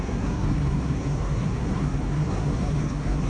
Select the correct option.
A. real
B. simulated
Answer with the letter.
B